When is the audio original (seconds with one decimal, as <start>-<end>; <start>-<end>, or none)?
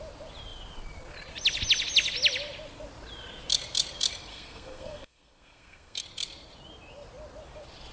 0.0-4.3; 6.0-7.9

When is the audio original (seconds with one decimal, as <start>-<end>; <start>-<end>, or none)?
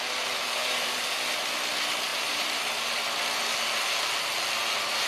0.0-0.6; 1.2-2.1; 2.6-5.1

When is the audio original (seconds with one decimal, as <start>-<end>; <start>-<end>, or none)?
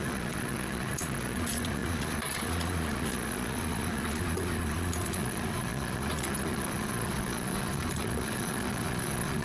none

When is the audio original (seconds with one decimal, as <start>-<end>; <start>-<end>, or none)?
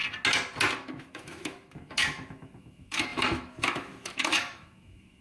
0.0-0.7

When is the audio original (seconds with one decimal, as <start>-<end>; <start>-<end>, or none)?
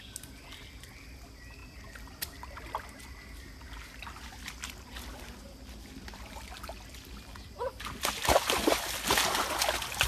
0.0-10.1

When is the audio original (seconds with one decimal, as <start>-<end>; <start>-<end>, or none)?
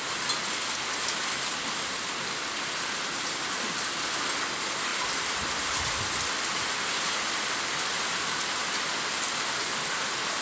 0.0-10.4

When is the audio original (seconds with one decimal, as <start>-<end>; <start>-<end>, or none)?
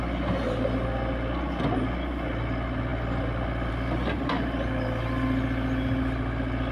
0.0-6.7